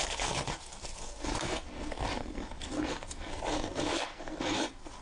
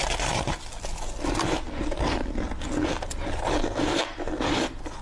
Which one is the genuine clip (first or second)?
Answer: second